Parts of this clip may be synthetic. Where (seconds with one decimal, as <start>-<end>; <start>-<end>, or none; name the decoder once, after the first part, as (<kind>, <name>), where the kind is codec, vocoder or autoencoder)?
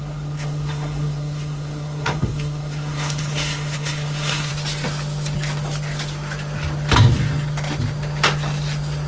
0.0-4.5 (codec, SNAC)